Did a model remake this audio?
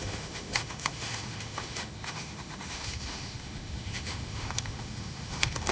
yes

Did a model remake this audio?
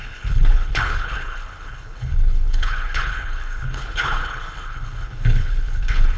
yes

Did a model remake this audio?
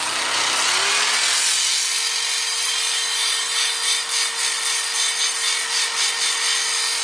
no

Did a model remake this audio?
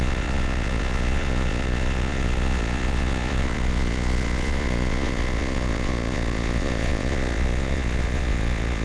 yes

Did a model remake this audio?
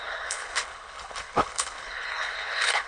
yes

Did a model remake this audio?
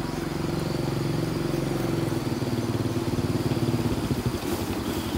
no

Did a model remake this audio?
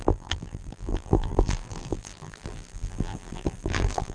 yes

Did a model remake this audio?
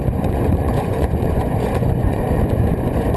yes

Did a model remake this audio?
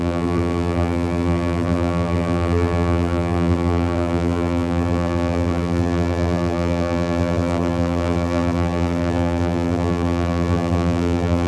yes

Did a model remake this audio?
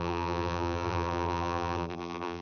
yes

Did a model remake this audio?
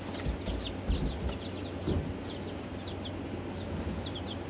no